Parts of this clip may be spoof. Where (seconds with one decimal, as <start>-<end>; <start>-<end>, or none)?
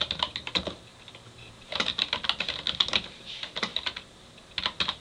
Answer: 0.9-1.7